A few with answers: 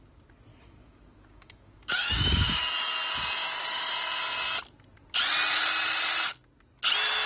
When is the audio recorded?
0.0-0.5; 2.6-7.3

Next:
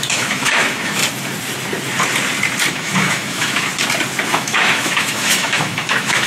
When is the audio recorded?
1.0-2.7; 3.7-4.3

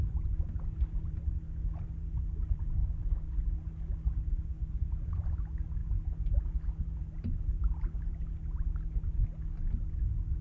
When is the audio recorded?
0.0-10.4